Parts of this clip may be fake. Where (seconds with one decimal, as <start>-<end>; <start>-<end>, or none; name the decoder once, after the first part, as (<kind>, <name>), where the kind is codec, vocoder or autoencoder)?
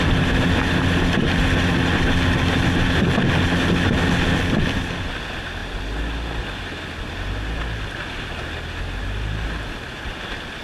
none